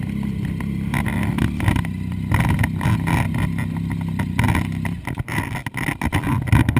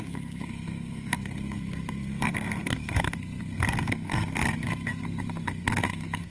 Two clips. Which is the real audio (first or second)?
first